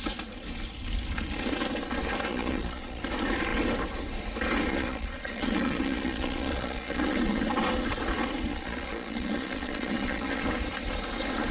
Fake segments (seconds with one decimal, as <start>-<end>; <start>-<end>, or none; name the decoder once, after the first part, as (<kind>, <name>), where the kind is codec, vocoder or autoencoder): 2.3-3.0 (vocoder, Vocos); 4.7-7.4; 8.5-10.4